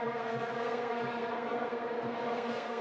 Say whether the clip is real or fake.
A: fake